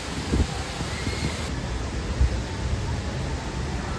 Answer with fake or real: real